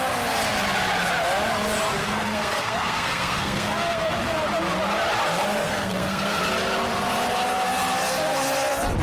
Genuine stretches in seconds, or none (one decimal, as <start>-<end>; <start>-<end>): 0.0-2.0; 4.1-5.6; 6.4-9.0